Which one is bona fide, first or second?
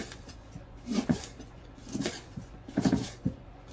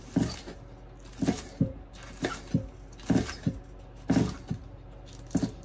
second